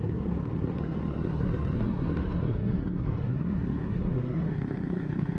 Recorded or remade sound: remade